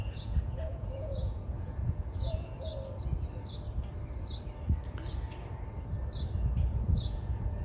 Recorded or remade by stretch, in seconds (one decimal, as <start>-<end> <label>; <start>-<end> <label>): 0.0-2.7 remade; 2.7-6.7 recorded; 6.7-7.6 remade